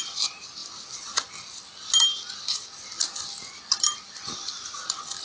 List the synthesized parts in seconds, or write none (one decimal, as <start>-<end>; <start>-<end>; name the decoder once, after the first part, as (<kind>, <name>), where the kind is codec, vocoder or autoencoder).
0.0-0.6 (vocoder, BigVGAN v2); 3.7-5.2